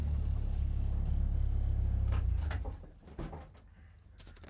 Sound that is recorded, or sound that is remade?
recorded